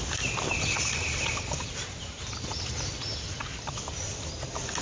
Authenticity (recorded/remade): recorded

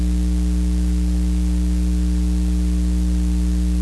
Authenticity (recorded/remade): recorded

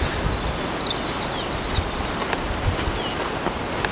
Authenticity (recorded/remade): recorded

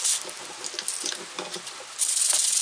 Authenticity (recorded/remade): recorded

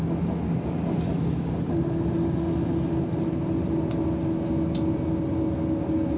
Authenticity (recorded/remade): recorded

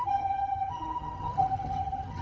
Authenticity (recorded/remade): remade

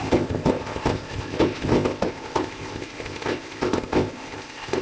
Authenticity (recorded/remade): remade